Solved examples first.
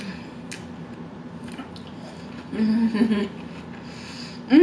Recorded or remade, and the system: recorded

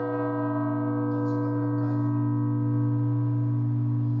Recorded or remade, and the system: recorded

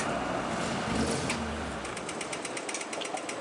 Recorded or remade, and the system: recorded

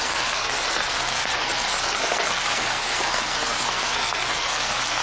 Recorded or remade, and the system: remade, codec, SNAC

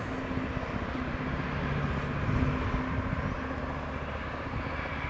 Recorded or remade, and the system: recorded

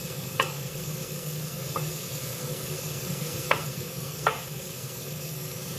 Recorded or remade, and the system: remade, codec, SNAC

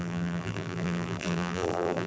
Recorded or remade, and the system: remade, vocoder, BigVGAN v2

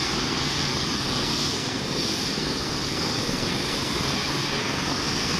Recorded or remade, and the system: remade, codec, SNAC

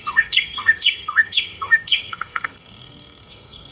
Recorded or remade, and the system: remade, codec, SNAC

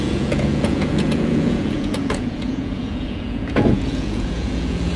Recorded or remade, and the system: remade, vocoder, Vocos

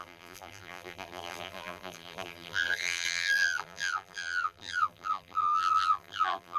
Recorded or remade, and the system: remade, vocoder, BigVGAN v2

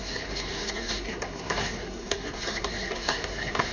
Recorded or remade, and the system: remade, codec, SNAC